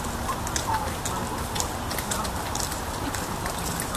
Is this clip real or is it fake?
real